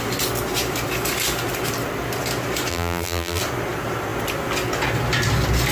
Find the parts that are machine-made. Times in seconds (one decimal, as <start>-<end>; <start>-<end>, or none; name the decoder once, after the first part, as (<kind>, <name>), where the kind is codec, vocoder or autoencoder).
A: 2.7-3.4 (vocoder, BigVGAN v2)